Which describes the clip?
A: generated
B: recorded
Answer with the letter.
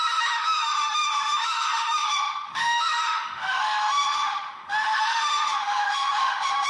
A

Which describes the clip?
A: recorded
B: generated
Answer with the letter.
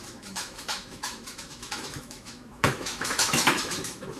B